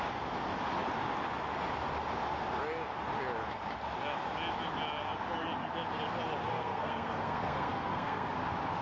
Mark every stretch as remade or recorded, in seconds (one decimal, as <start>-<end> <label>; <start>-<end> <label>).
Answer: 0.0-6.5 recorded; 6.5-8.3 remade; 8.3-8.8 recorded